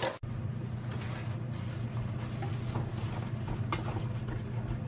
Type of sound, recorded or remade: recorded